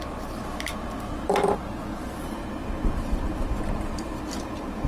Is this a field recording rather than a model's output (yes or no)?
no